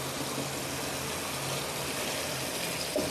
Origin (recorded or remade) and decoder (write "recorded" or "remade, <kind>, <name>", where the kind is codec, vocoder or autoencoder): recorded